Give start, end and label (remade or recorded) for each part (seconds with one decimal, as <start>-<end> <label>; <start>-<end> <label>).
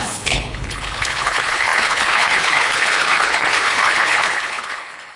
0.0-5.2 remade